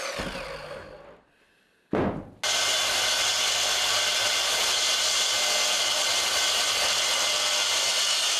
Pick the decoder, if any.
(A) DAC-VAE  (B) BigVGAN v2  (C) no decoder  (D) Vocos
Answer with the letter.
C